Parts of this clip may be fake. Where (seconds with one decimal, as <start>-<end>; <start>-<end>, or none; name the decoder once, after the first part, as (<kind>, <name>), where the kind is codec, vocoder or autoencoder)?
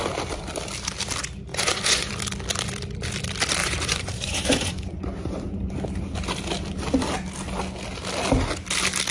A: 1.5-2.1 (vocoder, Vocos); 3.6-5.7